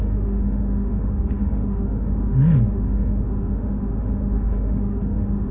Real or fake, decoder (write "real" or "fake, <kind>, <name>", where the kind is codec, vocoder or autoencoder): fake, autoencoder, DAC-VAE